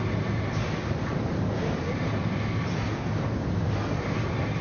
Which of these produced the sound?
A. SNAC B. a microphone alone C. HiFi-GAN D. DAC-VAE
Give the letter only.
B